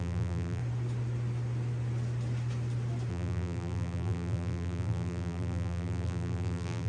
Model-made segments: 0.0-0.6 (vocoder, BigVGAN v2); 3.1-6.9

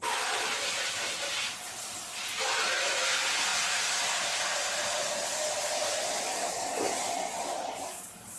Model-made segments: none

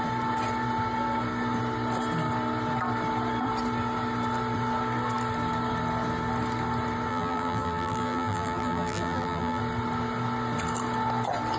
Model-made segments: 7.1-9.6 (vocoder, BigVGAN v2)